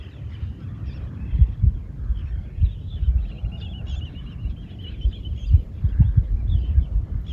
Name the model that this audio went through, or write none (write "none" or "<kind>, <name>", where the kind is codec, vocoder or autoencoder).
none